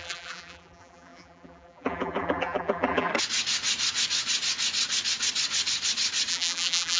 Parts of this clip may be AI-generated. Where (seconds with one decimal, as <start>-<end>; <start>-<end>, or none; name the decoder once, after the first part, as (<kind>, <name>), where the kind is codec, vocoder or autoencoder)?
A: 0.0-3.1 (vocoder, BigVGAN v2); 6.3-7.0